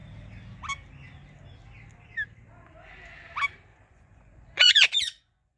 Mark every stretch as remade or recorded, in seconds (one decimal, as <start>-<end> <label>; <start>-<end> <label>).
0.0-3.7 recorded; 3.7-5.6 remade